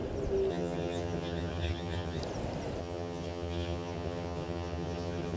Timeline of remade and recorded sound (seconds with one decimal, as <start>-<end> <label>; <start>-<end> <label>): 0.0-0.5 recorded; 0.5-2.2 remade; 2.2-2.8 recorded; 2.8-5.4 remade